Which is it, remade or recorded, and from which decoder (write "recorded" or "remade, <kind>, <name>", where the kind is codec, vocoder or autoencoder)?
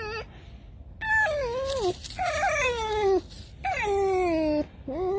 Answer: recorded